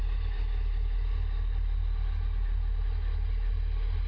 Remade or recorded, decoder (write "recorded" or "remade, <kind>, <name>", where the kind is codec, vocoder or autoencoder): recorded